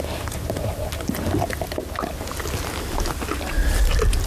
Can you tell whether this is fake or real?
real